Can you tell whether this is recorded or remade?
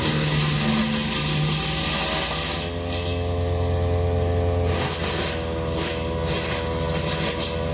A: recorded